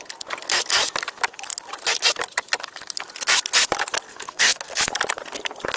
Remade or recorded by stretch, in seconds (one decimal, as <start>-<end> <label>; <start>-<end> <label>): 0.0-4.1 recorded; 4.1-4.8 remade; 4.8-5.8 recorded